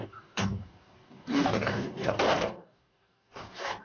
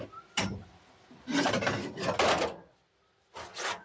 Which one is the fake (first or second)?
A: first